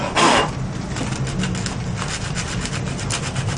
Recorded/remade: recorded